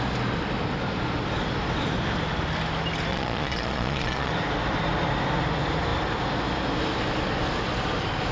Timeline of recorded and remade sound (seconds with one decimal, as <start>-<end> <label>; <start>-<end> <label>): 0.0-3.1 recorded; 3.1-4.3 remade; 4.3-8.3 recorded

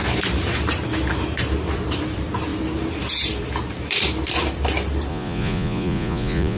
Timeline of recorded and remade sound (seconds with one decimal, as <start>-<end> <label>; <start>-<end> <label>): 0.0-5.1 recorded; 5.1-6.6 remade

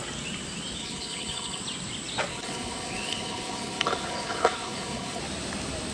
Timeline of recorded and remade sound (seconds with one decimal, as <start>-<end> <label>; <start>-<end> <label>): 0.0-0.8 recorded; 0.8-1.6 remade; 1.6-2.3 recorded; 2.3-5.2 remade; 5.2-5.9 recorded